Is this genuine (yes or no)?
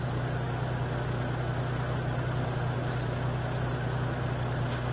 yes